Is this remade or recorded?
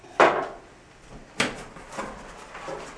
recorded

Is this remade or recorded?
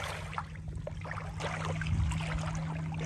recorded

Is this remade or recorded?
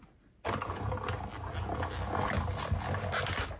recorded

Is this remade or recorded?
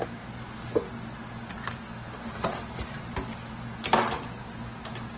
recorded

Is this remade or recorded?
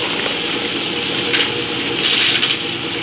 recorded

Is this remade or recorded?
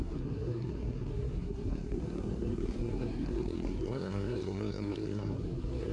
remade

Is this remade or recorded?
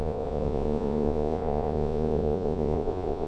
remade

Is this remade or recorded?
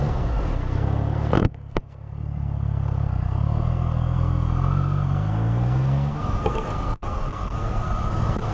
remade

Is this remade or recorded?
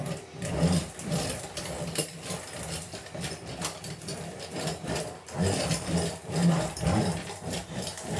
recorded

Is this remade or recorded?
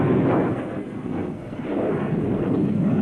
remade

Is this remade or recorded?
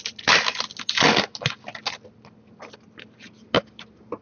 recorded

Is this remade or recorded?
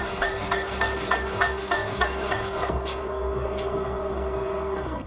remade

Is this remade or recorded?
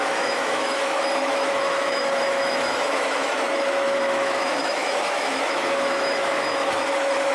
remade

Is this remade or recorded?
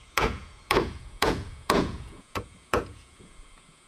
remade